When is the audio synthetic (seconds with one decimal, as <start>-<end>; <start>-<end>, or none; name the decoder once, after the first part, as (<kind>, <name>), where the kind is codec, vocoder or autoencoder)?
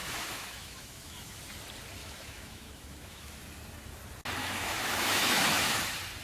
0.0-1.4 (autoencoder, DAC-VAE); 2.0-3.4; 4.4-5.8